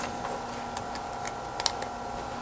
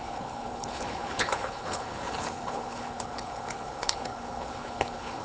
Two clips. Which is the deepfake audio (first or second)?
second